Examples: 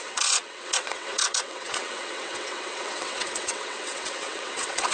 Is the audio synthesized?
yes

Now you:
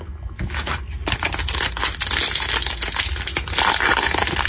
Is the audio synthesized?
no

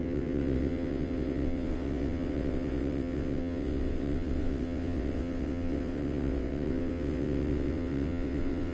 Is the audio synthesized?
yes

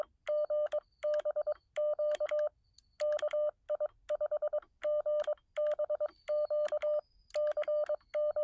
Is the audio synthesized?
no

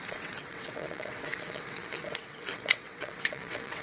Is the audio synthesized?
yes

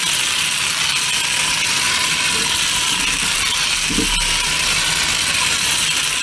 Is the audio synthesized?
no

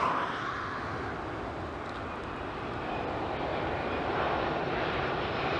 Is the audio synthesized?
no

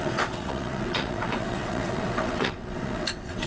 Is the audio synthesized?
yes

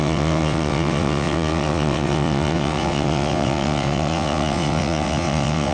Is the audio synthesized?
yes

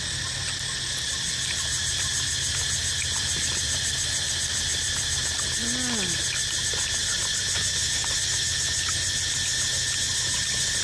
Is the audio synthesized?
no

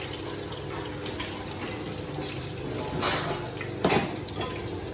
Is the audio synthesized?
no